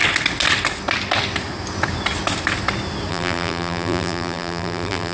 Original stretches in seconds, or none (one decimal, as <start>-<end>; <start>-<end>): 0.0-3.1